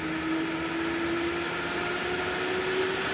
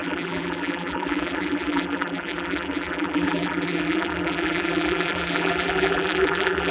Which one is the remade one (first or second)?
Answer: second